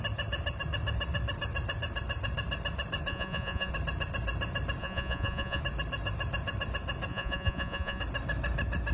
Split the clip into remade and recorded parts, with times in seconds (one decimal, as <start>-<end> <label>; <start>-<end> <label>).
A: 0.0-3.1 recorded; 3.1-3.7 remade; 3.7-4.8 recorded; 4.8-5.6 remade; 5.6-7.1 recorded; 7.1-8.0 remade; 8.0-8.9 recorded